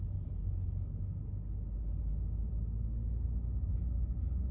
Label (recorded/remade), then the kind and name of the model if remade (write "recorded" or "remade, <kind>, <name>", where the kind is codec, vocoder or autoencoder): recorded